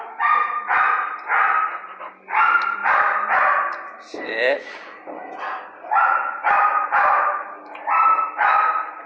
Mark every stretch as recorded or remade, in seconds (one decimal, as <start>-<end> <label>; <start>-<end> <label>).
0.0-9.1 recorded